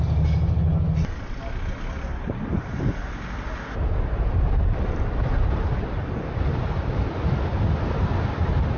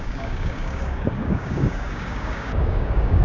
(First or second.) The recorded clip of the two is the first